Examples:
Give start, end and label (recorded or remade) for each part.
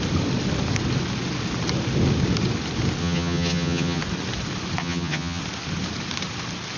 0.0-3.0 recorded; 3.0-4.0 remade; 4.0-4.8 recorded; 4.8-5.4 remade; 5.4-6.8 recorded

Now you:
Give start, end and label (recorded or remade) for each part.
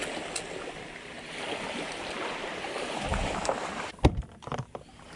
0.0-5.2 recorded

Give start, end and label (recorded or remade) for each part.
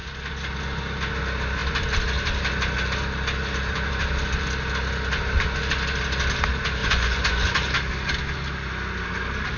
0.0-6.8 recorded; 6.8-7.5 remade; 7.5-9.6 recorded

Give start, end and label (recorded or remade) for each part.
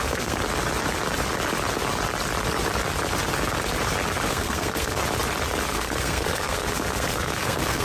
0.0-0.4 remade; 0.4-4.3 recorded; 4.3-5.0 remade; 5.0-5.7 recorded; 5.7-7.8 remade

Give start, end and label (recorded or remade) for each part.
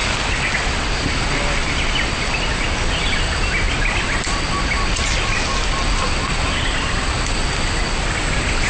0.0-8.7 recorded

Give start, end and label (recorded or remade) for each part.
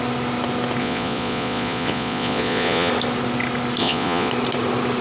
0.0-0.8 recorded; 0.8-2.9 remade; 2.9-3.8 recorded; 3.8-4.3 remade; 4.3-5.0 recorded